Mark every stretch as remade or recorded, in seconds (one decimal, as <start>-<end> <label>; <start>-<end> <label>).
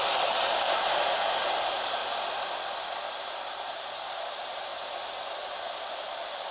0.0-2.0 remade; 2.0-3.2 recorded; 3.2-4.7 remade; 4.7-5.7 recorded; 5.7-6.5 remade